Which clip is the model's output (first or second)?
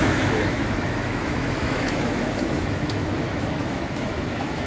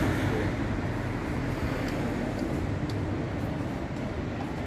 first